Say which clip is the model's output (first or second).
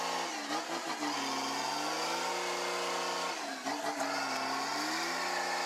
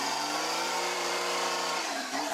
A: second